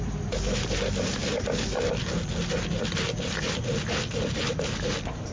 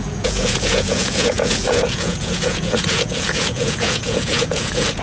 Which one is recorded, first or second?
first